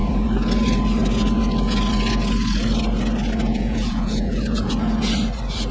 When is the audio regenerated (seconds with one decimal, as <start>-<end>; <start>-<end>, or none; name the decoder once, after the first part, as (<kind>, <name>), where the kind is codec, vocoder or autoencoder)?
3.5-4.7 (vocoder, Vocos)